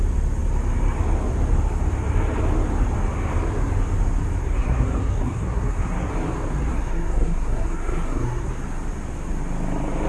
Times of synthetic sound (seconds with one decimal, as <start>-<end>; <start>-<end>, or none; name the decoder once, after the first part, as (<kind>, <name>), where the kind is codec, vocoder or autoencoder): 4.4-6.1 (codec, SNAC); 6.7-8.5